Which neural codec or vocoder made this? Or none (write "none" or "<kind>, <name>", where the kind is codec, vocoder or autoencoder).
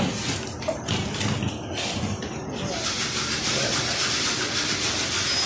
none